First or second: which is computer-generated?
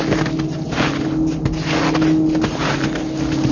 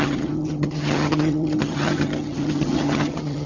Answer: second